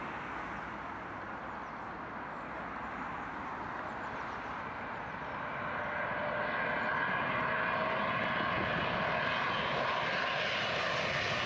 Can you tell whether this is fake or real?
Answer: real